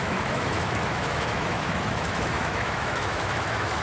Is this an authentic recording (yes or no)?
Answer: no